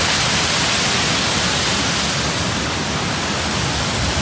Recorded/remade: recorded